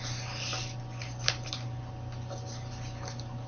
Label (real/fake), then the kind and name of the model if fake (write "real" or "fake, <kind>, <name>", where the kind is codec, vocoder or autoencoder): real